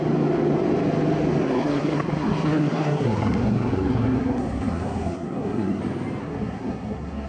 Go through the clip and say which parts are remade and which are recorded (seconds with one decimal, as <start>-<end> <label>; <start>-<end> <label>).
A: 0.0-1.4 recorded; 1.4-5.8 remade; 5.8-6.2 recorded; 6.2-7.3 remade